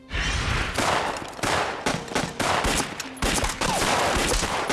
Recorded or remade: recorded